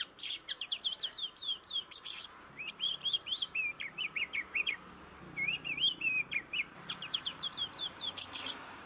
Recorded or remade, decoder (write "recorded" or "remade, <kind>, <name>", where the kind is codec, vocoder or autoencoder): remade, vocoder, BigVGAN v2